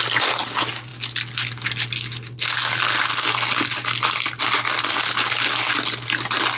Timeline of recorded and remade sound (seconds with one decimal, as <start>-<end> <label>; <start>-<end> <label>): 0.0-6.6 recorded